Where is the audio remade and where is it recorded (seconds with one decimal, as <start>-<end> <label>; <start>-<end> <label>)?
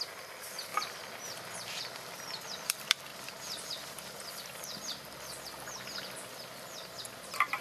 0.0-0.7 recorded; 0.7-2.7 remade; 2.7-3.1 recorded; 3.1-4.3 remade; 4.3-7.6 recorded